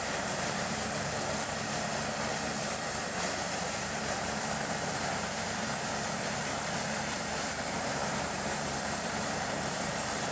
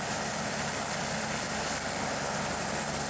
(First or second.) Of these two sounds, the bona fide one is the second